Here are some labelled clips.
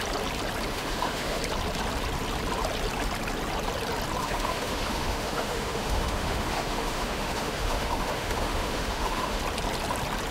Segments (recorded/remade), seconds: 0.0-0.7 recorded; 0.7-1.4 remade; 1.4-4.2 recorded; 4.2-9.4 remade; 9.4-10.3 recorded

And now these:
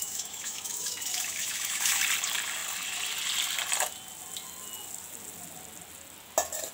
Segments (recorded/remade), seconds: 0.0-2.0 remade; 2.0-6.7 recorded